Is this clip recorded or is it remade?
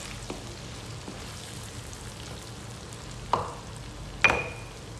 recorded